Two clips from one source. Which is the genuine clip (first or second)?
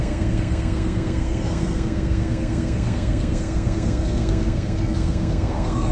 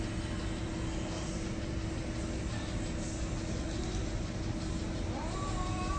second